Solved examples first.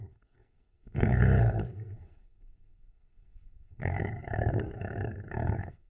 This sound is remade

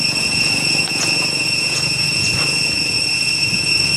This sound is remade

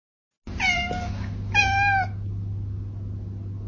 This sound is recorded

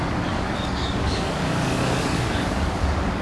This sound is remade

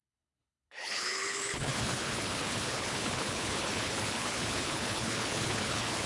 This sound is remade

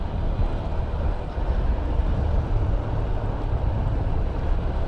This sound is recorded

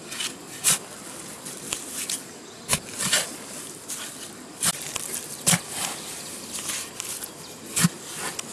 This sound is recorded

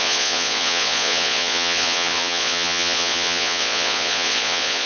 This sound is remade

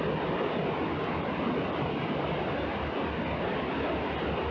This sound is recorded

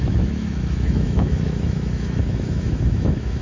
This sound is remade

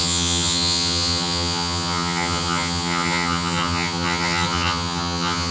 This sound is remade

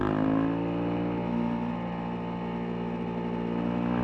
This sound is recorded